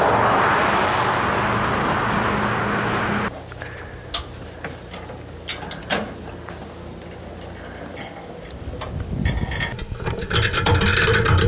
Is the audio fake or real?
real